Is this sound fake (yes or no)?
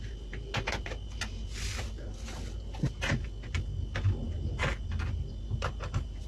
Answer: no